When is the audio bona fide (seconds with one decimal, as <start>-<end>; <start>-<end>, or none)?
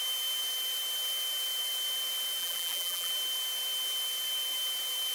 0.0-2.4; 3.1-5.1